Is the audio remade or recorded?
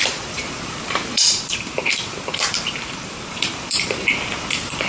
remade